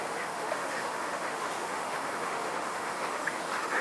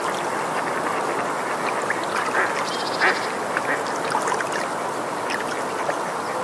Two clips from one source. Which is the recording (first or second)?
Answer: second